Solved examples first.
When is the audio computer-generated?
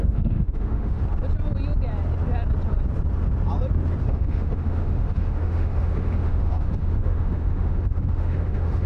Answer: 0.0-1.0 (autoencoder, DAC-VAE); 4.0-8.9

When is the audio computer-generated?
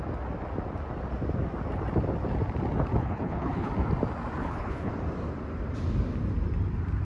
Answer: 3.0-3.7 (codec, HILCodec); 4.4-4.9